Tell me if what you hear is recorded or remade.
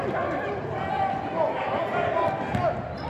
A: recorded